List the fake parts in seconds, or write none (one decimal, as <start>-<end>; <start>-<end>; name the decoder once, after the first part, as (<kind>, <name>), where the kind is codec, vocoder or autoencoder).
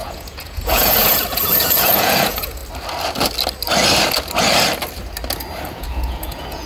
0.0-2.6 (vocoder, Vocos); 5.7-6.7